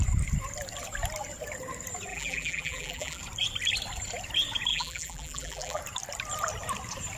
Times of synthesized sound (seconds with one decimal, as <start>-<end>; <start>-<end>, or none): 2.1-3.2; 4.7-5.8